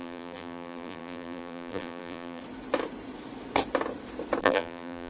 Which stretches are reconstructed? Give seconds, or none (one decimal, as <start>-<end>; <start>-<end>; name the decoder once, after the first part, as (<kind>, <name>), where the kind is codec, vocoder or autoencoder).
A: 0.0-2.4 (vocoder, BigVGAN v2); 4.4-5.1

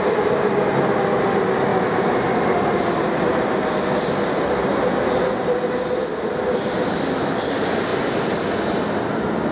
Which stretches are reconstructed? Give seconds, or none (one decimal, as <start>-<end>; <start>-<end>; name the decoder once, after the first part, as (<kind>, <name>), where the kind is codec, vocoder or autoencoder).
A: none

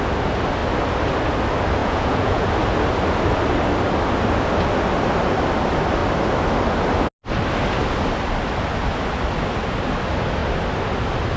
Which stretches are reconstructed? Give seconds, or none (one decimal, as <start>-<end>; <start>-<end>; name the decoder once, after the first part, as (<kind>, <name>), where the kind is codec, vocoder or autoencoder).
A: 1.8-2.5 (vocoder, Vocos)